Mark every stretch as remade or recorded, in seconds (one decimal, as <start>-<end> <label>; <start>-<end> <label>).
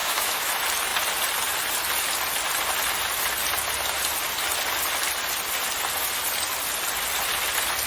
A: 0.0-0.5 remade; 0.5-7.9 recorded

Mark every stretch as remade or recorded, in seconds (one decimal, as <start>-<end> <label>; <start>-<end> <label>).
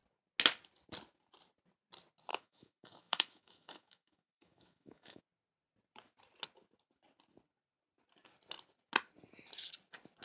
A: 0.0-2.3 recorded; 2.3-5.2 remade; 5.2-10.2 recorded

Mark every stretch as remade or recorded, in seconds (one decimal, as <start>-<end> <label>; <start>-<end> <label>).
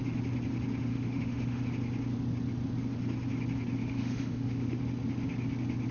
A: 0.0-0.9 recorded; 0.9-1.6 remade; 1.6-3.8 recorded; 3.8-4.8 remade; 4.8-5.9 recorded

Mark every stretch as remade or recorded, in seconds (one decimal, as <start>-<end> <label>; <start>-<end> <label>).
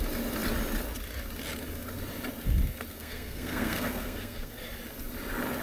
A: 0.0-2.9 recorded; 2.9-4.6 remade; 4.6-5.6 recorded